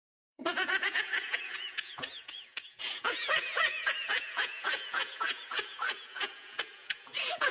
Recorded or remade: remade